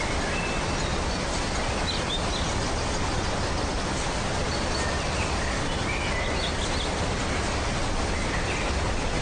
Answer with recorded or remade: recorded